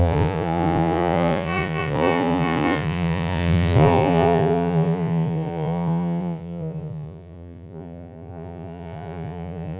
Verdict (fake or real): fake